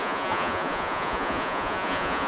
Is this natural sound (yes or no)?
no